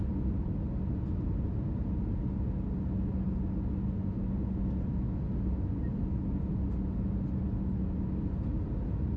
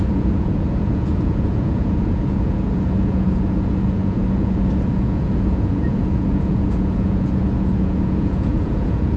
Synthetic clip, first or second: second